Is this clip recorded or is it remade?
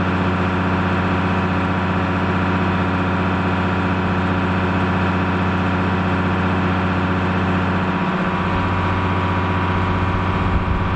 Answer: recorded